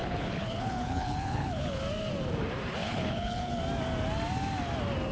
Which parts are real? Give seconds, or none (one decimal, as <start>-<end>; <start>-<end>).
1.8-2.8; 3.6-5.1